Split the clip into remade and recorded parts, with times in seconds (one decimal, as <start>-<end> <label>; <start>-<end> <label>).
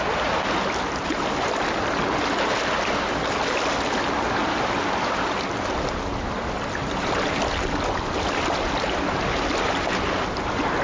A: 0.0-10.8 recorded